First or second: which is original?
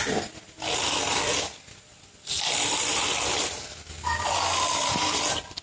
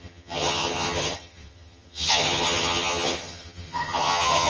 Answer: first